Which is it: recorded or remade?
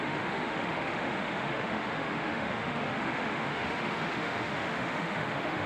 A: remade